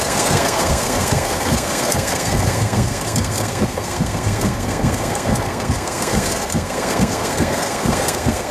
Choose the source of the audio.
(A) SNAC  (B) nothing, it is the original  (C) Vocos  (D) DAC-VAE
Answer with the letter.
A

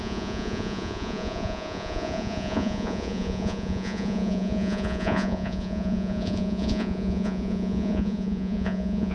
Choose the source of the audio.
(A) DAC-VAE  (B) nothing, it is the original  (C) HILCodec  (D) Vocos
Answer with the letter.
D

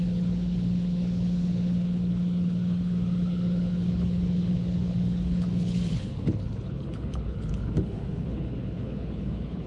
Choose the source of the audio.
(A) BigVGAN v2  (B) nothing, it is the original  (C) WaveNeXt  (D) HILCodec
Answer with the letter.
D